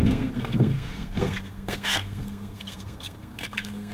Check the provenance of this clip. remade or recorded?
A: remade